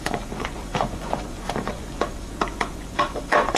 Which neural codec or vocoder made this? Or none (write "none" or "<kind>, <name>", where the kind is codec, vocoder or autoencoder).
vocoder, Vocos